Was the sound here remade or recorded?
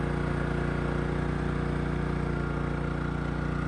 recorded